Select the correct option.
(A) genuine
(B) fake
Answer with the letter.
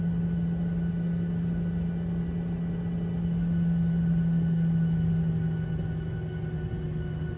A